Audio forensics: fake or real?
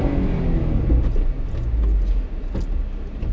real